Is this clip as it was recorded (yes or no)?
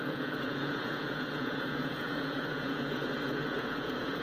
no